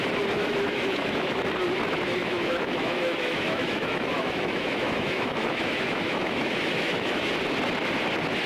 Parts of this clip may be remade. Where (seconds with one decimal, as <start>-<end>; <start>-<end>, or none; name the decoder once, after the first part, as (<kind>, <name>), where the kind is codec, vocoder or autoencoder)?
0.4-1.4 (autoencoder, DAC-VAE); 2.2-7.3